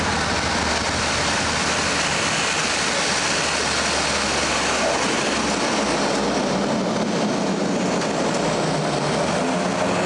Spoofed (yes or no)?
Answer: no